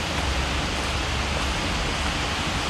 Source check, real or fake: real